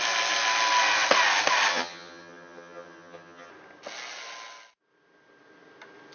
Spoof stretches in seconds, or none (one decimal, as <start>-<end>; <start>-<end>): 1.7-3.5